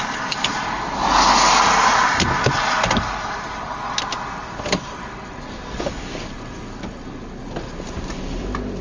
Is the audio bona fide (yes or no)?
yes